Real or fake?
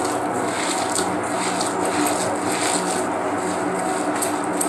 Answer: real